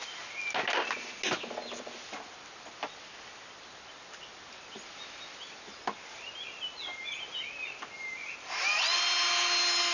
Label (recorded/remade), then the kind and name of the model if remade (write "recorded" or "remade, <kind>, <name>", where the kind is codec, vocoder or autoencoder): recorded